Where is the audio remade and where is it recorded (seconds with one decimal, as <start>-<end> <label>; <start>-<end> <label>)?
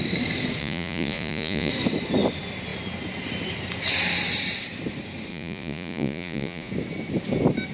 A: 0.0-0.6 recorded; 0.6-1.7 remade; 1.7-5.3 recorded; 5.3-6.7 remade; 6.7-7.7 recorded